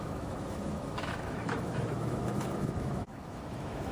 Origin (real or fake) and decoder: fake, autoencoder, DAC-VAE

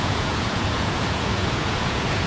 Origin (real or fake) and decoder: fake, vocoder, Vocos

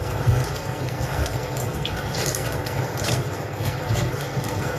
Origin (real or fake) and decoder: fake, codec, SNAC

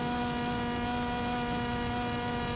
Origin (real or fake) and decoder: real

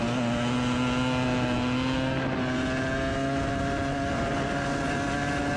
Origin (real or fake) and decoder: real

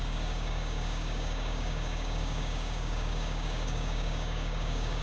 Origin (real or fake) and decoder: fake, codec, DAC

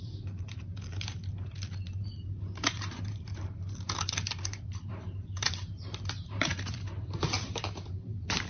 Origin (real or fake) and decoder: fake, vocoder, BigVGAN v2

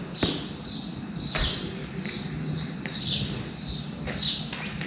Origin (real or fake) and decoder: real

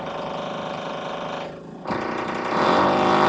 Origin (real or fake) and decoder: fake, vocoder, BigVGAN v2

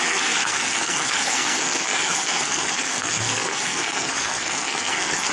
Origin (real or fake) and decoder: fake, codec, SNAC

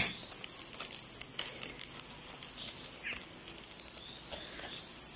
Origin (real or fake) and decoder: real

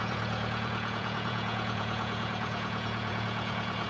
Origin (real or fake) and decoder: fake, vocoder, Vocos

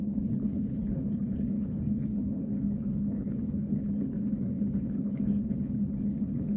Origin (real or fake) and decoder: fake, codec, HILCodec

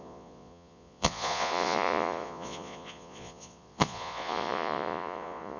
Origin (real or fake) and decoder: fake, vocoder, Vocos